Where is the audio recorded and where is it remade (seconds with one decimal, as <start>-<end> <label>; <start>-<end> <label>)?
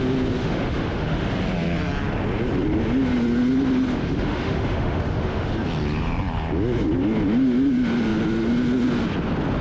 0.0-0.4 recorded; 0.4-1.3 remade; 1.3-3.9 recorded; 3.9-5.5 remade; 5.5-9.6 recorded